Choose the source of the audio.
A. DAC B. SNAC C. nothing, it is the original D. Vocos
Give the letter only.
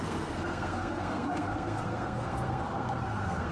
B